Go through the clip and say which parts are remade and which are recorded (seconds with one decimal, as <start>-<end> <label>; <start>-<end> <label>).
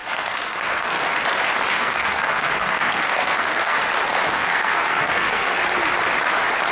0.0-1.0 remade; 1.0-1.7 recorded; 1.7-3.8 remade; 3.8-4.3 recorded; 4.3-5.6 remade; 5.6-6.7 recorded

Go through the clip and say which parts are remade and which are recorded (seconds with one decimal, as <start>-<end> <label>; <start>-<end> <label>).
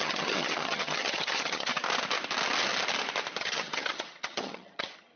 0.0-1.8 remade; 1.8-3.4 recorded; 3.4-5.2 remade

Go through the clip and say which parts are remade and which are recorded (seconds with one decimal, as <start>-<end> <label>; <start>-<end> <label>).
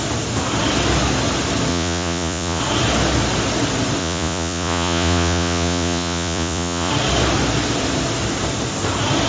0.0-1.7 recorded; 1.7-2.6 remade; 2.6-4.0 recorded; 4.0-6.9 remade; 6.9-9.3 recorded